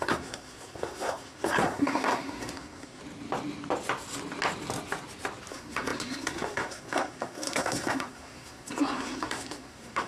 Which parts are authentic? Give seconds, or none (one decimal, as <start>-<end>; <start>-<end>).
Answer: 3.0-5.5